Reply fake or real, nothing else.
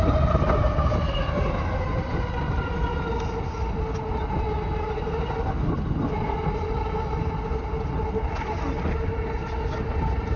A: real